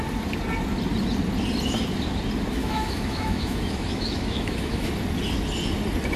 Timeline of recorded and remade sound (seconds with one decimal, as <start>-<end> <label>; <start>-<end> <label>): 0.0-2.6 recorded; 2.6-4.9 remade; 4.9-6.2 recorded

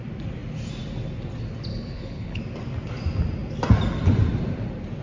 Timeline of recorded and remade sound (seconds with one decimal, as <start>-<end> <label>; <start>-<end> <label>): 0.0-1.7 recorded; 1.7-2.4 remade; 2.4-5.0 recorded